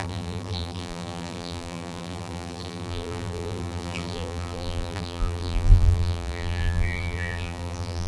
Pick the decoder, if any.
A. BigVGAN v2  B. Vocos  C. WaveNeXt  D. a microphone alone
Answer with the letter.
A